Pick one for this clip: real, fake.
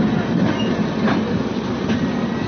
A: real